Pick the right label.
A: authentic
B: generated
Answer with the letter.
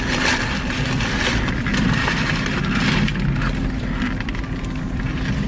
A